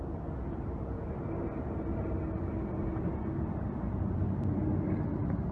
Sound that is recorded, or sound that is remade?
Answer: recorded